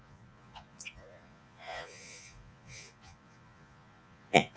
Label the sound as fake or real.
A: fake